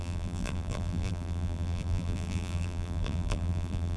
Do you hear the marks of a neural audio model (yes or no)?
yes